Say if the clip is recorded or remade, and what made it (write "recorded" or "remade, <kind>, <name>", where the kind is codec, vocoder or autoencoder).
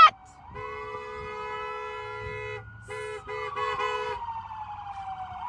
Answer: recorded